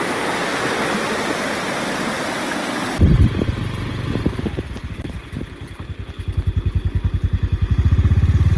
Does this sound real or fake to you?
real